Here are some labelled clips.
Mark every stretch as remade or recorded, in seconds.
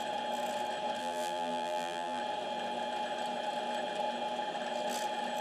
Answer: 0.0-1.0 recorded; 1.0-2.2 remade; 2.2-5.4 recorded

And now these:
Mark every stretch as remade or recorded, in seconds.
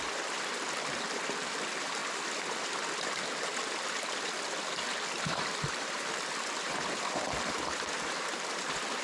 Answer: 0.0-9.0 remade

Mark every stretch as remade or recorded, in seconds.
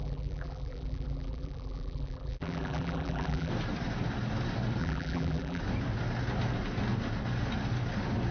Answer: 0.0-3.5 remade; 3.5-4.8 recorded; 4.8-5.6 remade; 5.6-8.3 recorded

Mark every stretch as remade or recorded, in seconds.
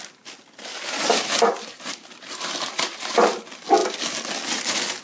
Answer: 0.0-0.7 recorded; 0.7-3.4 remade; 3.4-5.0 recorded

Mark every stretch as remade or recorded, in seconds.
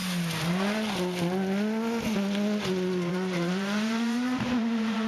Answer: 0.0-3.1 recorded; 3.1-5.1 remade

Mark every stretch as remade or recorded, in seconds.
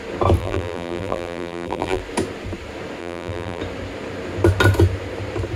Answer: 0.0-0.4 recorded; 0.4-2.0 remade; 2.0-3.0 recorded; 3.0-3.6 remade; 3.6-5.6 recorded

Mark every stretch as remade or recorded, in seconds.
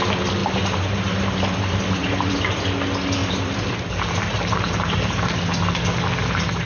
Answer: 0.0-0.4 recorded; 0.4-2.3 remade; 2.3-3.2 recorded; 3.2-5.4 remade; 5.4-6.7 recorded